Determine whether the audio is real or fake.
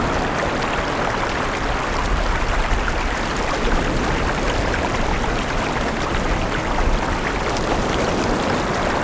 real